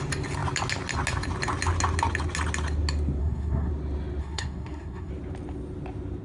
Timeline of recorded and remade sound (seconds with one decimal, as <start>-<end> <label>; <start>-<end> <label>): 0.0-3.2 recorded; 3.2-3.7 remade; 3.7-4.2 recorded; 4.2-5.1 remade; 5.1-6.2 recorded